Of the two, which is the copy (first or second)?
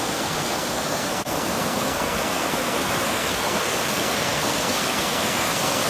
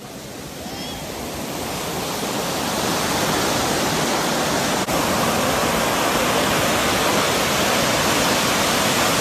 first